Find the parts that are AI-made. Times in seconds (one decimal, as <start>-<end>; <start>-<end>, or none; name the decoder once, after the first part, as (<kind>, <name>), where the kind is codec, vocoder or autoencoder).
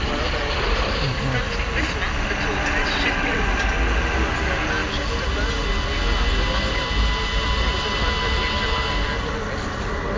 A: 2.8-3.4 (vocoder, WaveNeXt)